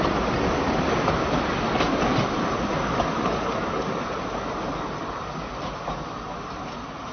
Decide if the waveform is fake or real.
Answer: real